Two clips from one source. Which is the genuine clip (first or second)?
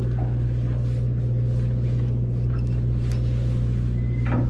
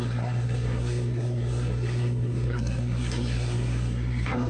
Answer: first